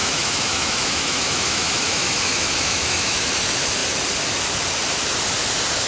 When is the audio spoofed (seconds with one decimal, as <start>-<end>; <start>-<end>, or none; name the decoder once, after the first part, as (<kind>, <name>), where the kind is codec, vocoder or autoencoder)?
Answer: 0.0-3.3 (autoencoder, DAC-VAE)